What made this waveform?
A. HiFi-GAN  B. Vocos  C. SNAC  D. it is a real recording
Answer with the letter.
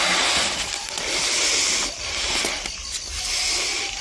D